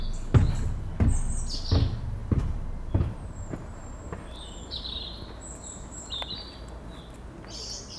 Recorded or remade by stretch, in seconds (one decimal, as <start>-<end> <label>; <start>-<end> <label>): 0.0-2.2 recorded; 2.2-7.0 remade; 7.0-8.0 recorded